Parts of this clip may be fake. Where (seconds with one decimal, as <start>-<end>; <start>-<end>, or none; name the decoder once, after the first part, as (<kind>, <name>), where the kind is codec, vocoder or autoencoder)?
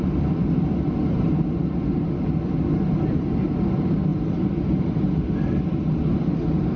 none